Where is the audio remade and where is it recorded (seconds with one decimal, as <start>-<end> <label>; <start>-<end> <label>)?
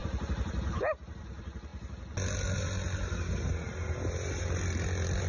0.0-5.3 recorded